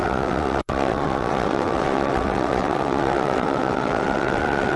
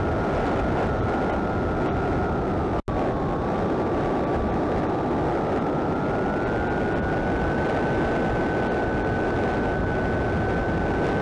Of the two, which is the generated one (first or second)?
first